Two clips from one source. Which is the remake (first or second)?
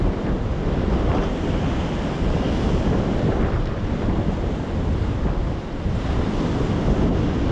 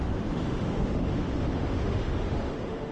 second